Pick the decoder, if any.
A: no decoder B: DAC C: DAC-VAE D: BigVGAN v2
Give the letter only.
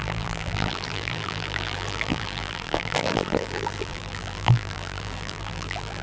D